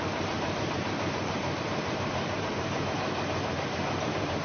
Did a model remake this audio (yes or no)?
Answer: yes